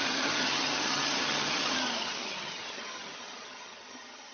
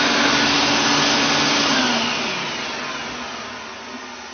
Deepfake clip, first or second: first